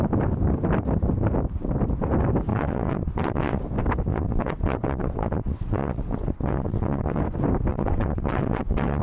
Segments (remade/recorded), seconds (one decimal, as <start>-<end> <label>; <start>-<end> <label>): 0.0-2.5 recorded; 2.5-3.6 remade; 3.6-4.1 recorded; 4.1-7.2 remade; 7.2-7.7 recorded; 7.7-9.0 remade